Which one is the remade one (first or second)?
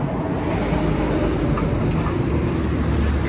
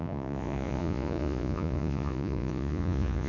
second